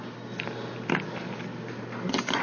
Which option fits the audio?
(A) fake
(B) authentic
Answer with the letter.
B